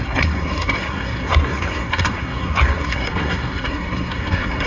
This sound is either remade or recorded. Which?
remade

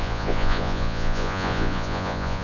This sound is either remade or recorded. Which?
remade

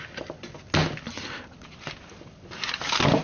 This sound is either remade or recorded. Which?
recorded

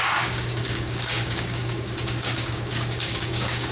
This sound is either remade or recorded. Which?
remade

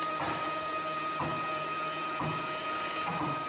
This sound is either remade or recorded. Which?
remade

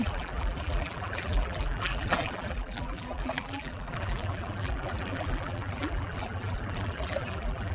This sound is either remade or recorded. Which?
remade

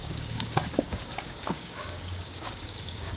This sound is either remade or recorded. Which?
remade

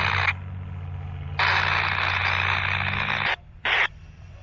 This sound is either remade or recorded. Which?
recorded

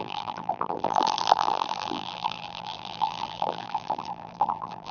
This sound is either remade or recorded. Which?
remade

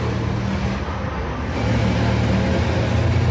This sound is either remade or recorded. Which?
recorded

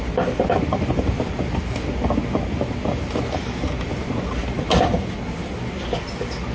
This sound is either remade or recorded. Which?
recorded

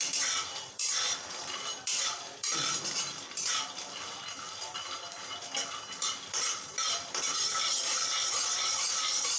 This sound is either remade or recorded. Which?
remade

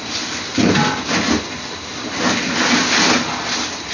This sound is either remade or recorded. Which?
recorded